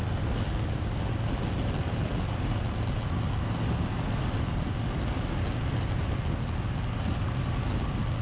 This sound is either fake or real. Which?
real